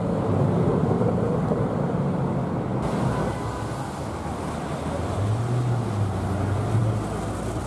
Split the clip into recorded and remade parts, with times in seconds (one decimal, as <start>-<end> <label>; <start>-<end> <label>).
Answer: 0.0-0.7 recorded; 0.7-2.2 remade; 2.2-7.7 recorded